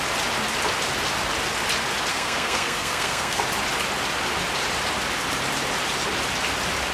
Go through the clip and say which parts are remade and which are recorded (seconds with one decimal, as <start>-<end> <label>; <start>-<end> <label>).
0.0-2.1 recorded; 2.1-3.4 remade; 3.4-6.9 recorded

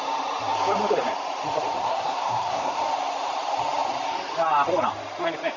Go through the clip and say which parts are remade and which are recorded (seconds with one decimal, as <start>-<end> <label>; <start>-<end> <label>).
0.0-1.8 recorded; 1.8-2.8 remade; 2.8-5.6 recorded

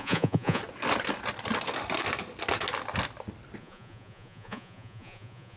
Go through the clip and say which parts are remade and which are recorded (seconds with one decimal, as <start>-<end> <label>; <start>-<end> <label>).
0.0-0.6 remade; 0.6-3.6 recorded; 3.6-5.6 remade

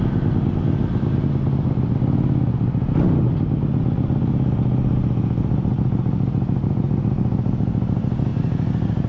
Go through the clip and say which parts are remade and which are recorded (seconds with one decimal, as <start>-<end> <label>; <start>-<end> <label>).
0.0-9.1 recorded

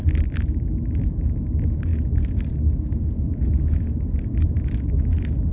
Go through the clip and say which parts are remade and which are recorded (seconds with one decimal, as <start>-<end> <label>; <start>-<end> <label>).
0.0-5.5 recorded